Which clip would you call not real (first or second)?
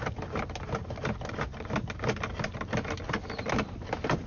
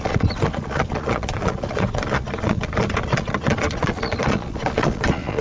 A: second